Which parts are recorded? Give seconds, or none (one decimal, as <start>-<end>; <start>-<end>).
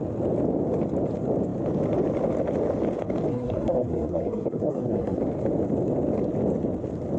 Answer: 0.0-3.3; 5.2-7.2